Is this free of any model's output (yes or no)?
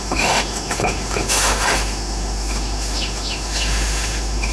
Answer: no